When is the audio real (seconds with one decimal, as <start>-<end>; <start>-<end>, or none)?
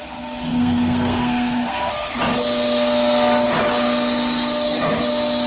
0.0-0.5; 1.9-5.5